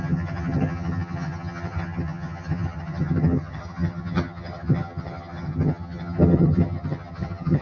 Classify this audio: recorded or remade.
remade